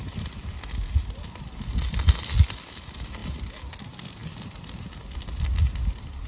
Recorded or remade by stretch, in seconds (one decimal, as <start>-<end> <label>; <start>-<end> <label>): 0.0-6.3 recorded